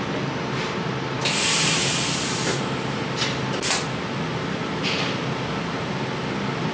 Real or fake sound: real